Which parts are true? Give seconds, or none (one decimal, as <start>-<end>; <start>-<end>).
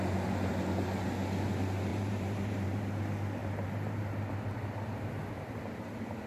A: 0.0-1.9; 2.8-3.4; 4.3-6.3